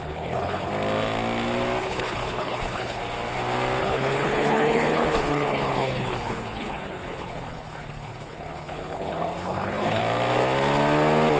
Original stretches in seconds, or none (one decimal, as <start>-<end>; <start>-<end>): 0.7-1.8; 3.0-3.8; 10.0-11.4